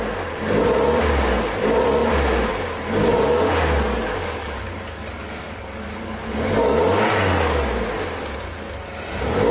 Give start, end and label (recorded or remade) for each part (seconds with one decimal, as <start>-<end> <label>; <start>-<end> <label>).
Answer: 0.0-3.1 recorded; 3.1-7.7 remade; 7.7-9.5 recorded